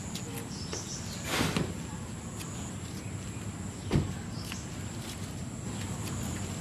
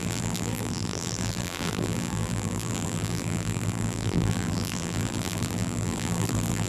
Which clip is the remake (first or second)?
second